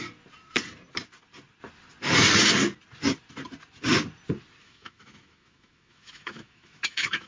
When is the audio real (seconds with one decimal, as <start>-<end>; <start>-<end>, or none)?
0.0-4.6